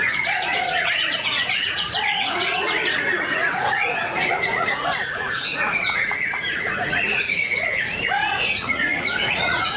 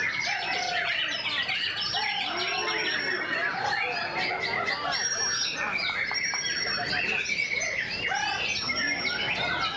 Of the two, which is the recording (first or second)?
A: second